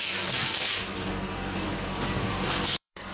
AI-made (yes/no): yes